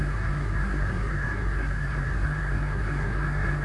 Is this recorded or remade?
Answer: remade